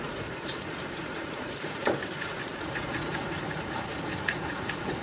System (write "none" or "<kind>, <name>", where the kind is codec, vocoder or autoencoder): vocoder, Vocos